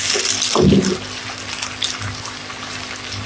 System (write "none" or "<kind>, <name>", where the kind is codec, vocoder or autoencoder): none